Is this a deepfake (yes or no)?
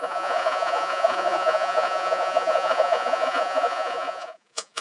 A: yes